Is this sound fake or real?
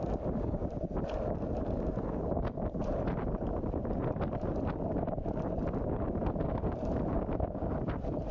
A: real